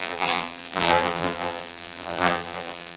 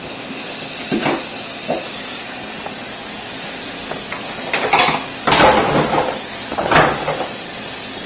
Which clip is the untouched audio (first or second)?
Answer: second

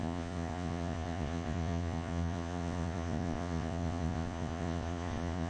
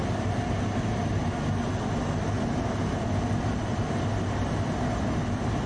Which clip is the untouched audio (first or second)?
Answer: second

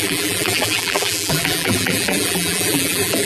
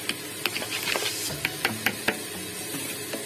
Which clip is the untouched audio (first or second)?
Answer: second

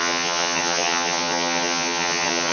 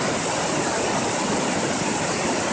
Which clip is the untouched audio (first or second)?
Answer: second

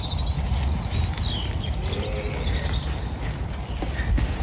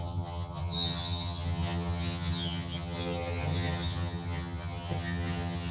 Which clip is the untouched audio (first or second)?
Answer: first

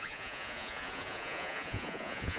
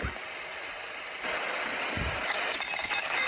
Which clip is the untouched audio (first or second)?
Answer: second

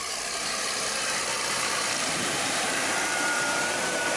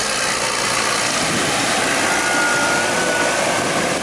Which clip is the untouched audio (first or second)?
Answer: second